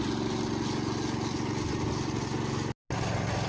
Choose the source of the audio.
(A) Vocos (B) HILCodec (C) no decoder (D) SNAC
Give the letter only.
C